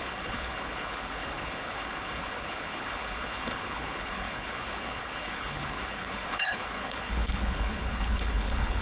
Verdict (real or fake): fake